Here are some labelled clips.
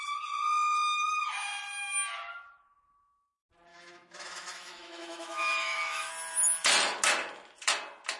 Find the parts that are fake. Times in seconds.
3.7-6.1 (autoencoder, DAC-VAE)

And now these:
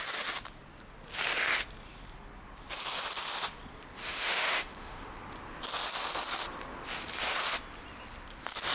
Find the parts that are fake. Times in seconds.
4.0-5.1 (autoencoder, DAC-VAE)

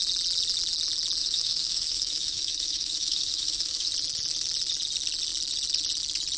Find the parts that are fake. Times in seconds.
1.2-3.9 (autoencoder, DAC-VAE)

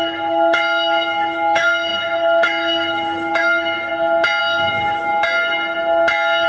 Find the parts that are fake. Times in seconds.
0.0-3.9 (autoencoder, DAC-VAE); 4.4-5.1

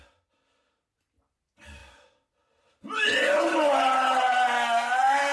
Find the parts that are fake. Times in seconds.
none

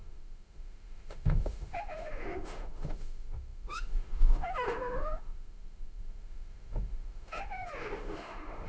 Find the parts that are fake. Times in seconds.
0.0-8.7 (autoencoder, DAC-VAE)